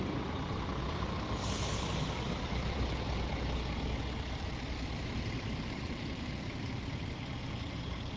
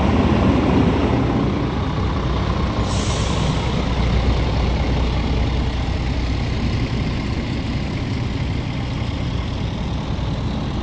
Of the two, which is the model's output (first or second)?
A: first